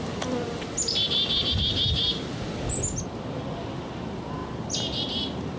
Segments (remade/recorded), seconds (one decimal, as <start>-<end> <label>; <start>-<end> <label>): 0.0-5.6 recorded